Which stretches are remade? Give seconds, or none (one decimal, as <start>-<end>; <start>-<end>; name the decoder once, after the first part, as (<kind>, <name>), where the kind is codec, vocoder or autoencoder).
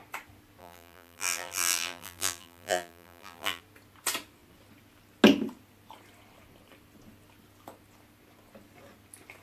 0.6-3.6 (vocoder, BigVGAN v2)